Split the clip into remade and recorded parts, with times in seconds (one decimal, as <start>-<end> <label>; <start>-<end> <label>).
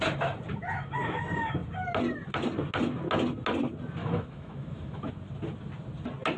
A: 0.0-4.0 recorded; 4.0-5.1 remade; 5.1-6.4 recorded